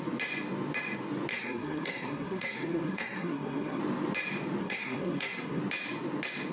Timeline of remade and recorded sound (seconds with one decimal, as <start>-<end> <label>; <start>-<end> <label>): 0.0-1.3 recorded; 1.3-3.8 remade; 3.8-4.6 recorded; 4.6-5.6 remade; 5.6-6.5 recorded